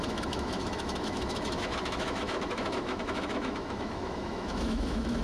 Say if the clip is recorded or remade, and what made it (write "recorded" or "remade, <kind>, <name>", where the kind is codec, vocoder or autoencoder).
remade, autoencoder, DAC-VAE